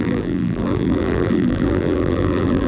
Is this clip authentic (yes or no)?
no